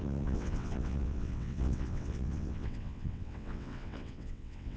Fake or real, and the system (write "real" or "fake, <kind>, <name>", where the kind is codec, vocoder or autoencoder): fake, vocoder, WaveNeXt